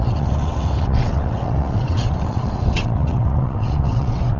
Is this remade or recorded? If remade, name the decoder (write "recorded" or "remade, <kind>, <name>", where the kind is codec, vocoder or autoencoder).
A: remade, vocoder, WaveNeXt